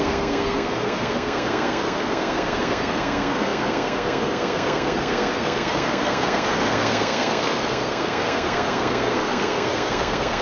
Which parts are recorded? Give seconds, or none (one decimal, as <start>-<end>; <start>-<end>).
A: none